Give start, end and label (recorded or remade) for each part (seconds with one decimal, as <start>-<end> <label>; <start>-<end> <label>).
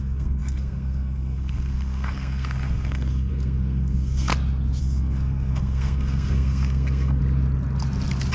0.0-4.3 remade; 4.3-4.8 recorded; 4.8-7.2 remade; 7.2-8.3 recorded